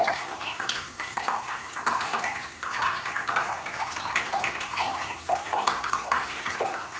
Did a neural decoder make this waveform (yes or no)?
yes